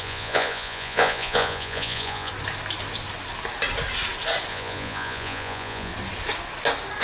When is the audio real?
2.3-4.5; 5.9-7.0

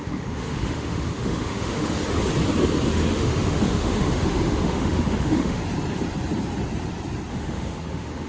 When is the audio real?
2.0-2.9; 5.6-7.3

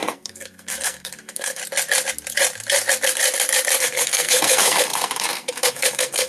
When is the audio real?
1.6-3.8